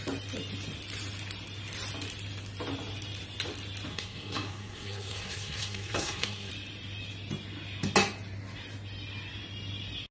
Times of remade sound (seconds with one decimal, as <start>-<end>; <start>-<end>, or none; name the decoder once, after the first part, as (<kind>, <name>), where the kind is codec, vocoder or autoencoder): 3.9-6.5 (codec, SNAC)